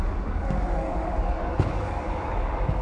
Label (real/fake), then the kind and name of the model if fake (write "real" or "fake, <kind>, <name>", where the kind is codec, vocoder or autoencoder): fake, codec, DAC